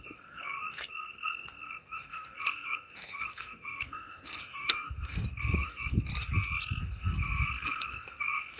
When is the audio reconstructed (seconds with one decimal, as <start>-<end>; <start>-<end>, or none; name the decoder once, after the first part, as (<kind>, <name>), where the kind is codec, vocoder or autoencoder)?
0.0-6.1 (codec, SNAC); 6.8-8.6